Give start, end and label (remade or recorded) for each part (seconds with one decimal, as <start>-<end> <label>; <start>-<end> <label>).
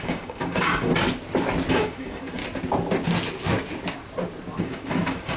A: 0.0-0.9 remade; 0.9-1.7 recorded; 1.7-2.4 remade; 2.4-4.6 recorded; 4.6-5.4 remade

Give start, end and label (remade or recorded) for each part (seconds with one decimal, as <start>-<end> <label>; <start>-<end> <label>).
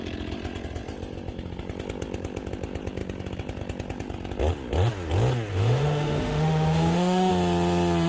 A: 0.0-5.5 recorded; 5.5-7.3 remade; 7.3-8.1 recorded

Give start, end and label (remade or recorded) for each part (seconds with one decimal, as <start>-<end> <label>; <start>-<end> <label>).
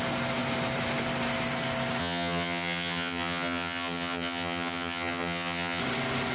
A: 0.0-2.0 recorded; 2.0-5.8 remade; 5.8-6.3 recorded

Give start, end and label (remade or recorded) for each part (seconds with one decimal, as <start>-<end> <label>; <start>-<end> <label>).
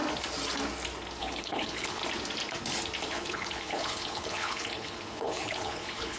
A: 0.0-1.2 recorded; 1.2-2.0 remade; 2.0-3.1 recorded; 3.1-6.2 remade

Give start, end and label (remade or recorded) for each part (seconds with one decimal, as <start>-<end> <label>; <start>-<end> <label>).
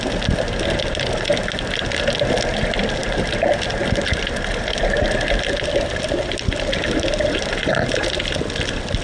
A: 0.0-9.0 recorded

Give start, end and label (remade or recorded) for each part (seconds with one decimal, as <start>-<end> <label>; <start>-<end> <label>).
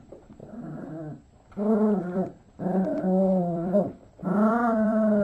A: 0.0-0.4 remade; 0.4-2.0 recorded; 2.0-5.2 remade